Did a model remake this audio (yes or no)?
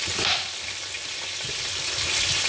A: no